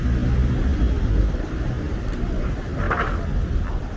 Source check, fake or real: real